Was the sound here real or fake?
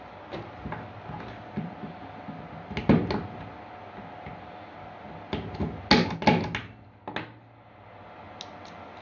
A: real